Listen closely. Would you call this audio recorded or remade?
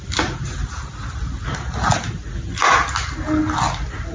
recorded